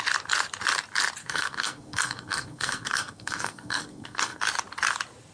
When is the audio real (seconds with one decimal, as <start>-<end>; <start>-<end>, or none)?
0.0-1.2; 4.4-5.3